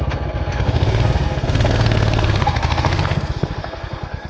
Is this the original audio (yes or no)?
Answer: no